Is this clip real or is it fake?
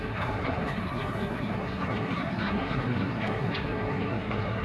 fake